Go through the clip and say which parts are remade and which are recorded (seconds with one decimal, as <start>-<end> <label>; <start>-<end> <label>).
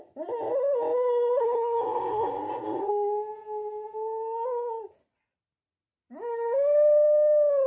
0.0-1.4 recorded; 1.4-2.9 remade; 2.9-7.7 recorded